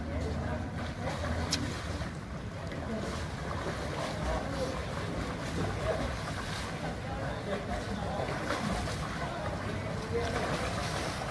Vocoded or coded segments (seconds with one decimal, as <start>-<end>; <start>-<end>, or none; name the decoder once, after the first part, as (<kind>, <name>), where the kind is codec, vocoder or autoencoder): none